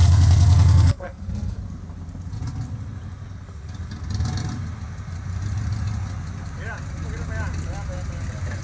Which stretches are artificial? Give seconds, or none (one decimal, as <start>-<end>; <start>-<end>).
0.0-1.6